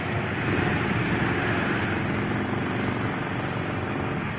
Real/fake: real